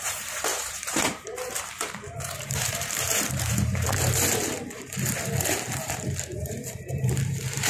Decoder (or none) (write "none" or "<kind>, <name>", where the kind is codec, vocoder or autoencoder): vocoder, BigVGAN v2